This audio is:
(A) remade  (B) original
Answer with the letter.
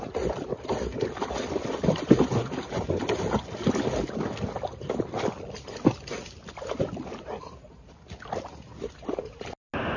B